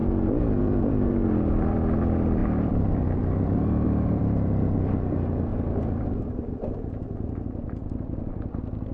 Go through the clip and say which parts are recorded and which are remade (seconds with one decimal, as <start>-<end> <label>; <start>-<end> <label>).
0.0-0.6 recorded; 0.6-8.9 remade